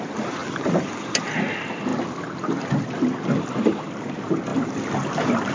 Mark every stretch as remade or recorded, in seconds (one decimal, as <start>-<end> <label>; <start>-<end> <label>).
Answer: 0.0-5.5 recorded